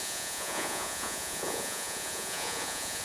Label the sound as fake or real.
fake